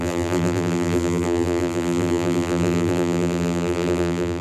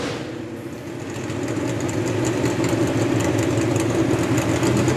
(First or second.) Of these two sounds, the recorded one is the second